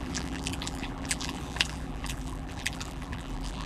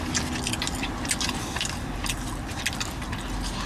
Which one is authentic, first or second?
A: second